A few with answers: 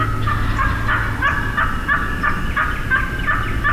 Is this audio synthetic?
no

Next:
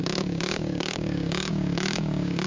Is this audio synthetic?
yes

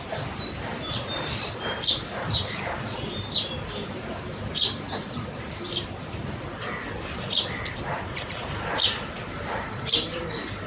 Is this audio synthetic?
no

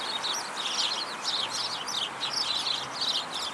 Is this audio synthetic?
no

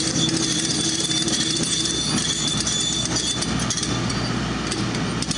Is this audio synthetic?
no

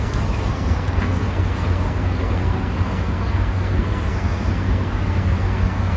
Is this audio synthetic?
yes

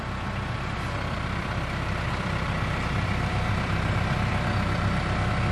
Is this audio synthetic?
yes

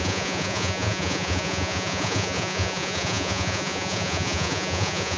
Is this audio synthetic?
yes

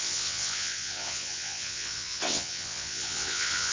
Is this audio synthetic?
yes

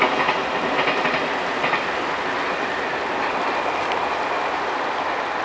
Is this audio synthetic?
no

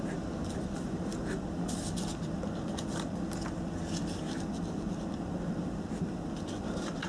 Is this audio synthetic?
no